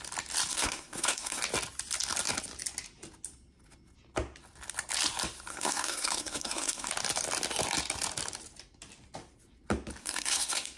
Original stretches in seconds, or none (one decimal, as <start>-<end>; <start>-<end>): 0.0-0.5; 1.4-5.5; 6.9-10.0